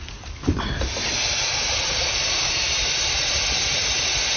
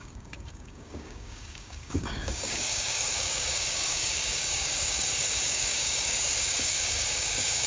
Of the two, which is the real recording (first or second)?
first